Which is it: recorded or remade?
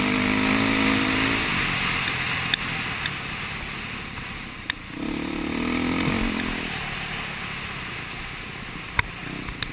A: recorded